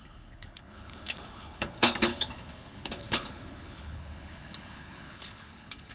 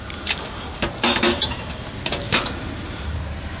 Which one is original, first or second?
second